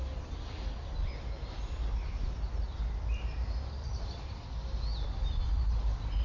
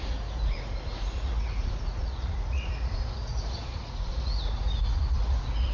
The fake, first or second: second